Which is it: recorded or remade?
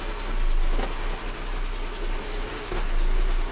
recorded